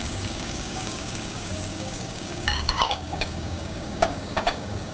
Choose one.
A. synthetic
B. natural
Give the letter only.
A